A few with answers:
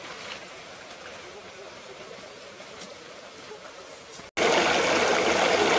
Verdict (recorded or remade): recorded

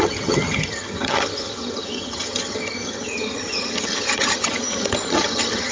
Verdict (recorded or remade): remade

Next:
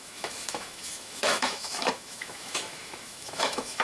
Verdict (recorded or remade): remade